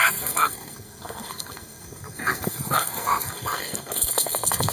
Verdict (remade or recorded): remade